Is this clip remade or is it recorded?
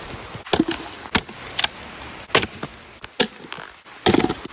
recorded